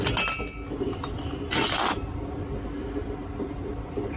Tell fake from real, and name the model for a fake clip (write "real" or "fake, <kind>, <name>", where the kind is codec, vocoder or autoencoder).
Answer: real